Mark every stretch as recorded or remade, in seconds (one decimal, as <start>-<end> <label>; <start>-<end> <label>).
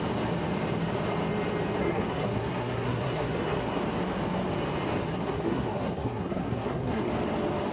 0.0-1.8 recorded; 1.8-3.8 remade; 3.8-5.1 recorded; 5.1-7.1 remade; 7.1-7.7 recorded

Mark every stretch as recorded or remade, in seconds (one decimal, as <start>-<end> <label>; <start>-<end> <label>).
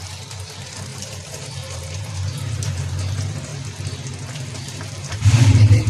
0.0-3.5 remade; 3.5-4.1 recorded; 4.1-5.9 remade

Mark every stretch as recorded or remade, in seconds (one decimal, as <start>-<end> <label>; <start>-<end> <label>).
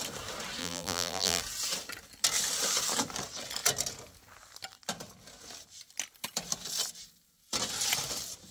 0.0-0.6 recorded; 0.6-1.4 remade; 1.4-8.5 recorded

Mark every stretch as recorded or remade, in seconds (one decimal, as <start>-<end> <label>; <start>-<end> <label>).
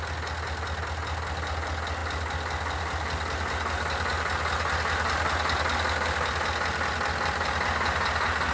0.0-8.5 recorded